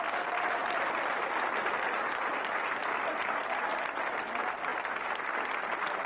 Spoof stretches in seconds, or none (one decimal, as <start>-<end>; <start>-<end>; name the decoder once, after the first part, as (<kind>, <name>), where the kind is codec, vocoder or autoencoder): none